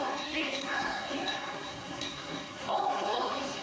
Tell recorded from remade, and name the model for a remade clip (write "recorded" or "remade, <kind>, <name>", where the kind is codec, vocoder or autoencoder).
remade, codec, SNAC